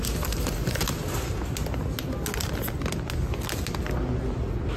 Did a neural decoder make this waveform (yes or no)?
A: no